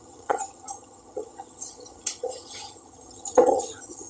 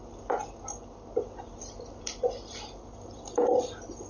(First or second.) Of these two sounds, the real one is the second